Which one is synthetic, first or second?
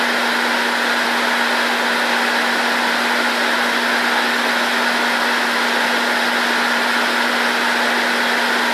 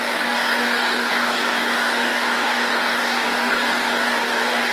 second